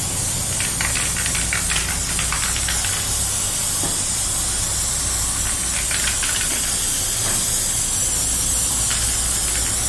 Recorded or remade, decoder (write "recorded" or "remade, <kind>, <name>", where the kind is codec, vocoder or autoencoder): recorded